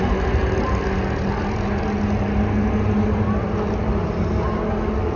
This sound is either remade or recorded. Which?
recorded